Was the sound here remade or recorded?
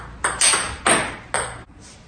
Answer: recorded